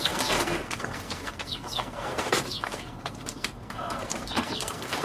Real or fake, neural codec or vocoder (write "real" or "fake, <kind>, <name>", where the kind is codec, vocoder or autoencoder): fake, codec, SNAC